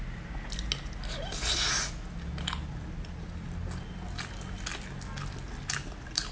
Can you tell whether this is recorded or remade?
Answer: recorded